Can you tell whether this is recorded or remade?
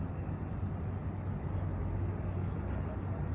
recorded